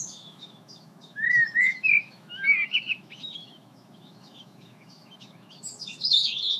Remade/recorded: remade